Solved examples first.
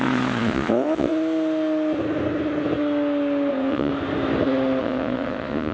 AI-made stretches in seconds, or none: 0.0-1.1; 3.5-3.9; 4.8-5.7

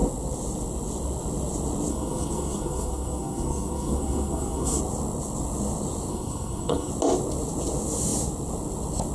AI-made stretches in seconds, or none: 1.9-4.8; 6.1-6.9

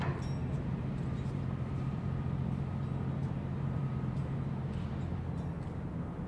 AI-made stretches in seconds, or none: 0.4-2.0; 3.2-4.6